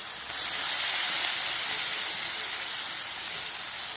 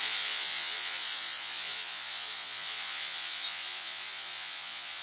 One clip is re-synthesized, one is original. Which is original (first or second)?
first